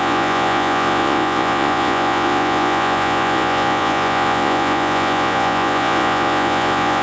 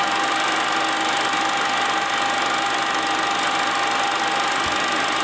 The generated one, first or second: first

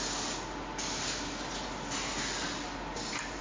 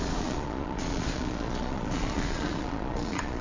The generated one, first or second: second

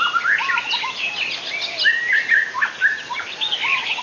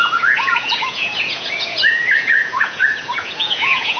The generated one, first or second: second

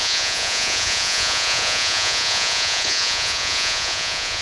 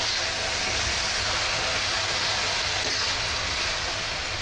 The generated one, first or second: first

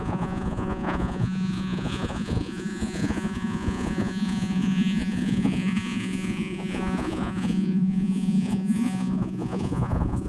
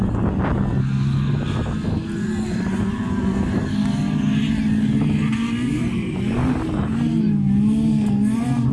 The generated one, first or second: first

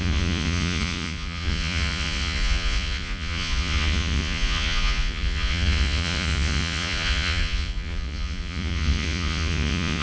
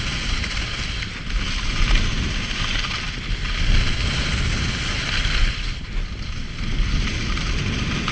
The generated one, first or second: first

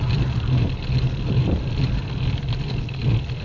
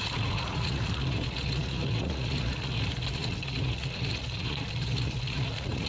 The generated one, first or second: second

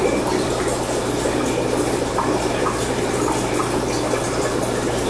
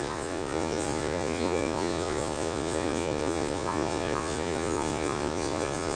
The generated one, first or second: second